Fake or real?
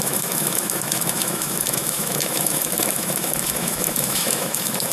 fake